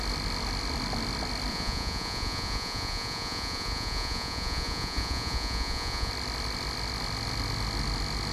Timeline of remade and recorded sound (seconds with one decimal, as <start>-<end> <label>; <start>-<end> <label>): 0.0-1.5 recorded; 1.5-6.1 remade; 6.1-8.3 recorded